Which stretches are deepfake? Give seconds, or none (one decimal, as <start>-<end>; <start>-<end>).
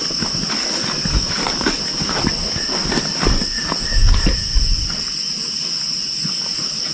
none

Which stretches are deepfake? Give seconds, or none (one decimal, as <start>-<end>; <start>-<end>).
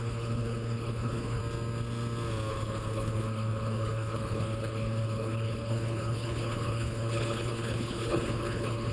0.0-1.4; 2.5-8.9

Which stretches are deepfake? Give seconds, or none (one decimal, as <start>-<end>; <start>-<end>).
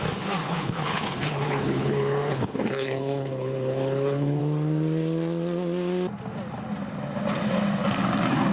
0.4-4.4